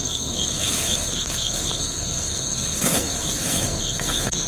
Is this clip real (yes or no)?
no